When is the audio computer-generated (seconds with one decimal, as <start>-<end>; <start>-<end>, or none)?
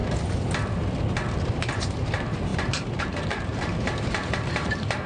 1.4-5.1